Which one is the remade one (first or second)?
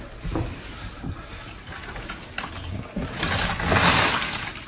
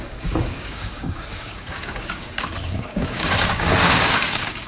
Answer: second